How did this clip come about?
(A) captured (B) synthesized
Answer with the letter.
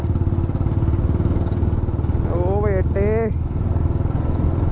A